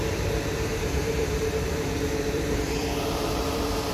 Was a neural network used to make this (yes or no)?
yes